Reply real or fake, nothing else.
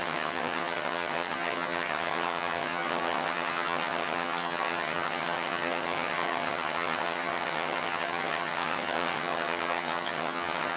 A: fake